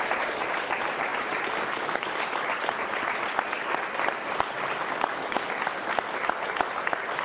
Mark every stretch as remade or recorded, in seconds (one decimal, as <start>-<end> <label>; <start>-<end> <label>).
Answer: 0.0-7.2 recorded